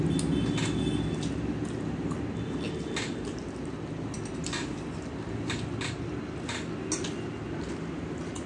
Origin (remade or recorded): recorded